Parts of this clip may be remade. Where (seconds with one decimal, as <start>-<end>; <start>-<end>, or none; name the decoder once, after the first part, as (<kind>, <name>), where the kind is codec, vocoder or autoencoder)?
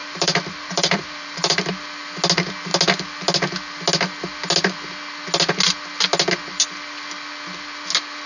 0.0-1.6 (vocoder, BigVGAN v2)